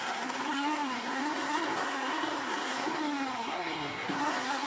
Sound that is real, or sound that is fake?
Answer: fake